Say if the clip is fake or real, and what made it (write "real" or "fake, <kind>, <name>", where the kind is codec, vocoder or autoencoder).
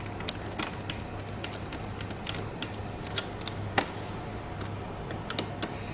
real